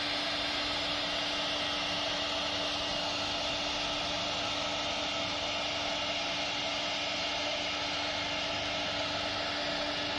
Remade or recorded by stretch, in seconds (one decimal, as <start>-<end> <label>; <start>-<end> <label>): 0.0-10.2 recorded